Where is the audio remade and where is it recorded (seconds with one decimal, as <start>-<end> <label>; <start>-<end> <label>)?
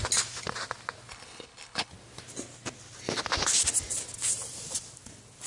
0.0-1.1 recorded; 1.1-1.9 remade; 1.9-5.5 recorded